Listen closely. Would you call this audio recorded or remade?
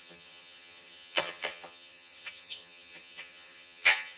remade